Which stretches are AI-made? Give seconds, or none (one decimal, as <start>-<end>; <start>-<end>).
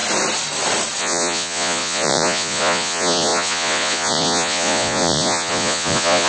1.0-6.3